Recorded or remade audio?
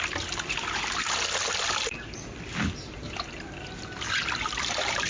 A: recorded